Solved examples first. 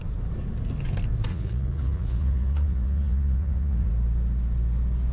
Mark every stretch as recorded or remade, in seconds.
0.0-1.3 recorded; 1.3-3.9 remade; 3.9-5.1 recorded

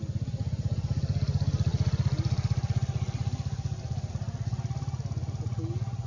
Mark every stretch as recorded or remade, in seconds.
0.0-6.1 recorded